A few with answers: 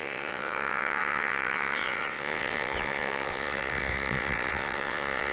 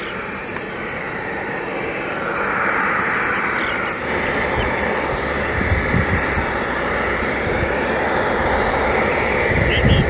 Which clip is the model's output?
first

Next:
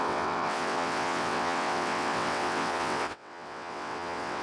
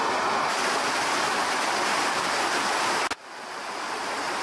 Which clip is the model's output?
first